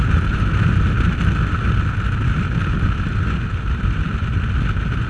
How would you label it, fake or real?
real